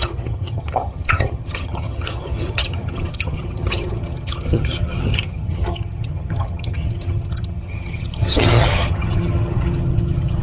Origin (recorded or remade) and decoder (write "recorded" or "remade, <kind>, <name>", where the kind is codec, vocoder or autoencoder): remade, vocoder, HiFi-GAN